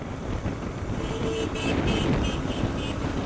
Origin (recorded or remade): recorded